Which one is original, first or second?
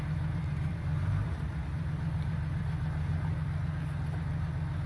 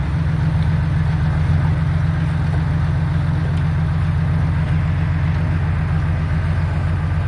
second